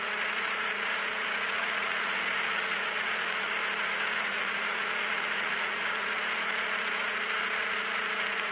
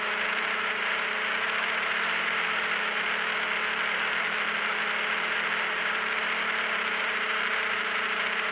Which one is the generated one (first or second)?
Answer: first